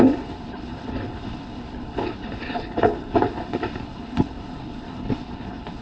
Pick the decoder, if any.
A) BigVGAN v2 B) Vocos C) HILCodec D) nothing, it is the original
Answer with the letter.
C